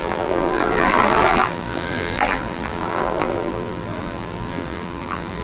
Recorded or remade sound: remade